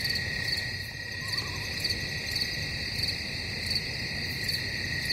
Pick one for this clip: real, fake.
real